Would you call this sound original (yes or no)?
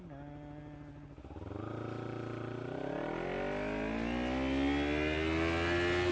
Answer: yes